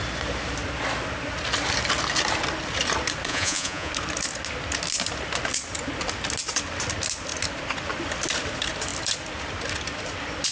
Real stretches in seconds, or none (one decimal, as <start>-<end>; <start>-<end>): 0.0-3.3; 3.9-10.5